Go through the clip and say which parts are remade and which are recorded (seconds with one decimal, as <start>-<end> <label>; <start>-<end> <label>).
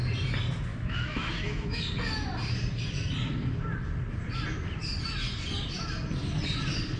0.0-0.7 recorded; 0.7-1.8 remade; 1.8-7.0 recorded